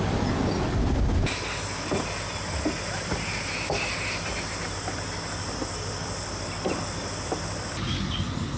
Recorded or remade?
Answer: recorded